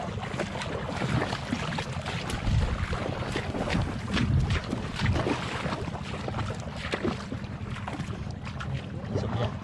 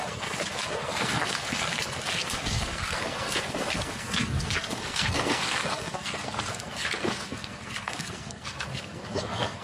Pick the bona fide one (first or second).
first